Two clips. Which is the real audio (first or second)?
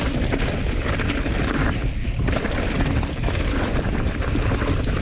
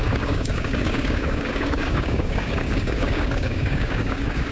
first